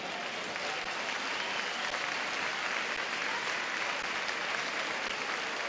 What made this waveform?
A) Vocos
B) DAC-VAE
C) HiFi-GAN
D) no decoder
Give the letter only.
D